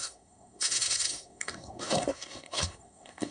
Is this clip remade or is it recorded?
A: remade